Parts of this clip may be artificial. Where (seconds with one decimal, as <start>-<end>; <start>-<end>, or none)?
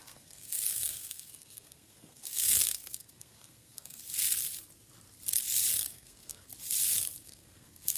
0.0-4.0; 5.9-6.5; 7.2-8.0